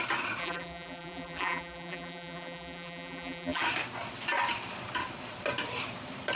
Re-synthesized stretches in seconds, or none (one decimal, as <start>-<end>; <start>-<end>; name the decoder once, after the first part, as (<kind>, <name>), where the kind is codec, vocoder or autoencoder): 0.4-3.6 (vocoder, BigVGAN v2)

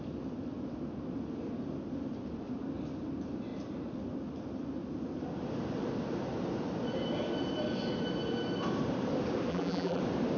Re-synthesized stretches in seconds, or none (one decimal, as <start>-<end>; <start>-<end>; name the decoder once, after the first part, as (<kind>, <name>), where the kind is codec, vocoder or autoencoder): 9.5-10.0 (vocoder, BigVGAN v2)

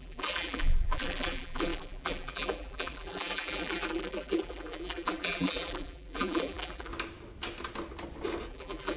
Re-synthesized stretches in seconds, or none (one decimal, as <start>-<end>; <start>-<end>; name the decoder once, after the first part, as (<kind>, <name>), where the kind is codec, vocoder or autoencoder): 0.0-6.9 (vocoder, BigVGAN v2); 8.5-9.0